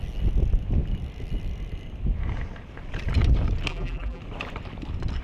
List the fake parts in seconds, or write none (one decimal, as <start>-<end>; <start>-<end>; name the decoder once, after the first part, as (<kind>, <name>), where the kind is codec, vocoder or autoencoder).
3.7-4.2 (vocoder, BigVGAN v2)